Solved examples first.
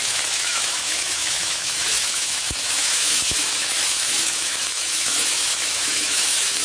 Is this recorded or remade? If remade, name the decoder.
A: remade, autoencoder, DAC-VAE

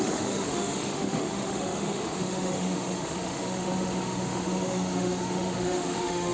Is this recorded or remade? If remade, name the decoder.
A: remade, autoencoder, DAC-VAE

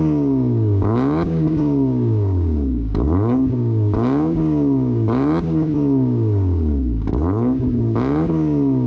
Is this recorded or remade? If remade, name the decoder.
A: remade, codec, DAC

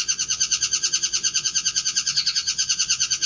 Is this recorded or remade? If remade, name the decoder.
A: remade, vocoder, Vocos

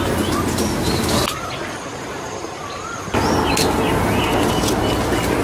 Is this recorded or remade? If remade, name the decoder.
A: recorded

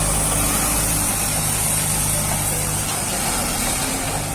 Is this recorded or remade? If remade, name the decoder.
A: recorded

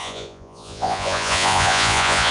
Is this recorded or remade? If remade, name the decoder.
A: remade, vocoder, Vocos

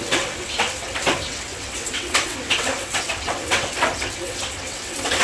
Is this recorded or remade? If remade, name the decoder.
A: remade, vocoder, WaveNeXt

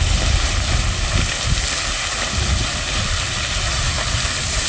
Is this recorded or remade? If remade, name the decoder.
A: recorded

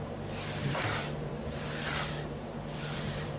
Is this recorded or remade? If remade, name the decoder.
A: remade, vocoder, BigVGAN v2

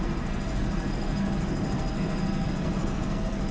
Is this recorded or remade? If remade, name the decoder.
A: remade, codec, SNAC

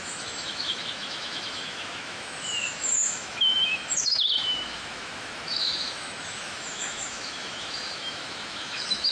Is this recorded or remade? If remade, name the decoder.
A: remade, autoencoder, DAC-VAE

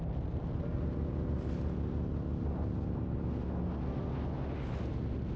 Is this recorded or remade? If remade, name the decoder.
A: recorded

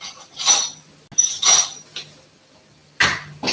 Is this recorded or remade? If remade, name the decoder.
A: recorded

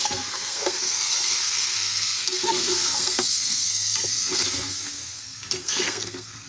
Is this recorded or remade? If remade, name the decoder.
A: remade, codec, SNAC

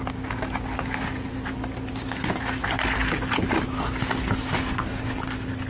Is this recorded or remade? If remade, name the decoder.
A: recorded